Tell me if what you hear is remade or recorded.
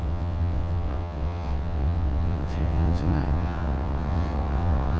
remade